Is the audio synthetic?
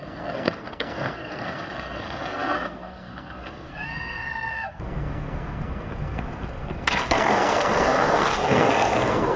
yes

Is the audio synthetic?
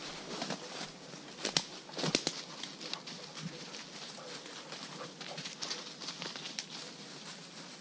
no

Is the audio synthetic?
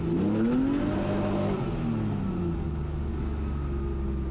no